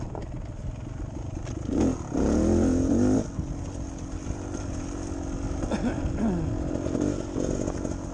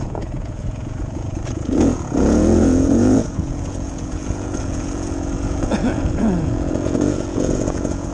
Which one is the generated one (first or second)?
second